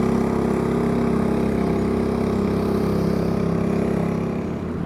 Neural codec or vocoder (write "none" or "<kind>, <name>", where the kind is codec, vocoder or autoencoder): none